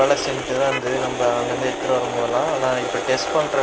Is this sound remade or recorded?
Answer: recorded